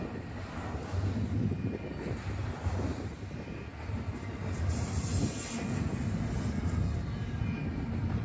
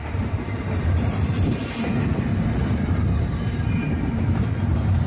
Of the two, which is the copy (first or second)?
second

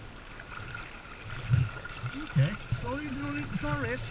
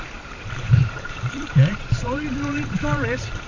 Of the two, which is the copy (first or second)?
second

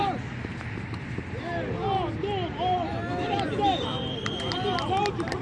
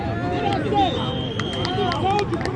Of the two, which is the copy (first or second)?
first